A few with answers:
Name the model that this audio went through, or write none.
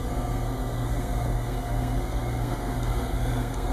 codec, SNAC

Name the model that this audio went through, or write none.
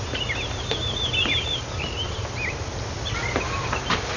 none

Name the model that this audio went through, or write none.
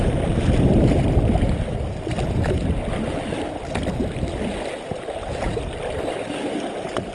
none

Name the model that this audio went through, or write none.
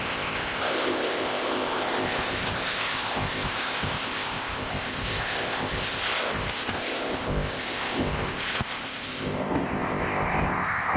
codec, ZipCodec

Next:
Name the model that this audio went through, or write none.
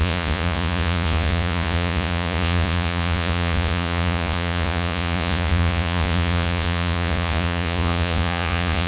vocoder, Vocos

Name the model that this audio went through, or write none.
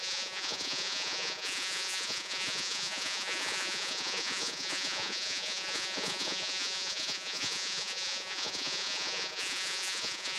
vocoder, Vocos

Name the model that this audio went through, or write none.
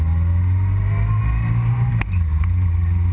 none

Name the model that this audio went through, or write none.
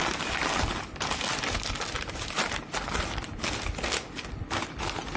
none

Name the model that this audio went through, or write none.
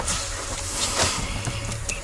none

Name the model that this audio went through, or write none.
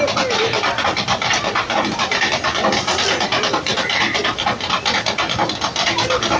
none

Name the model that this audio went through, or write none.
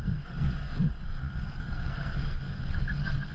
codec, SNAC